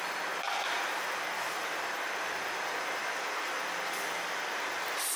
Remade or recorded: recorded